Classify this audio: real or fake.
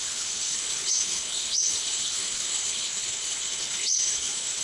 fake